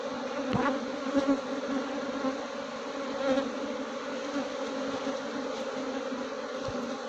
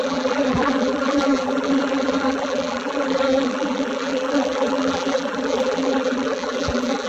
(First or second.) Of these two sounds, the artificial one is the second